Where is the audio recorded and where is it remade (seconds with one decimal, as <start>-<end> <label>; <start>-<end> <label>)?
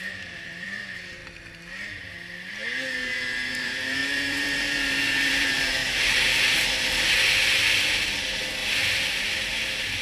0.0-1.2 remade; 1.2-2.5 recorded; 2.5-5.8 remade; 5.8-7.9 recorded; 7.9-8.6 remade; 8.6-9.2 recorded; 9.2-10.0 remade